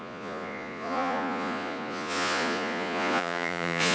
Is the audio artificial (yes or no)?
yes